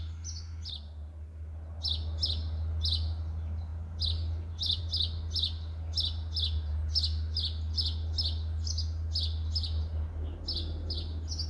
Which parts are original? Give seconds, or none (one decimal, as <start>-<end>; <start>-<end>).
0.0-11.5